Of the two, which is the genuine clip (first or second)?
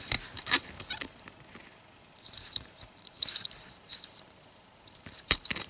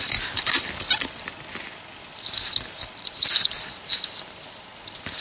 second